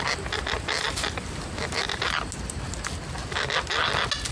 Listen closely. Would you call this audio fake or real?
real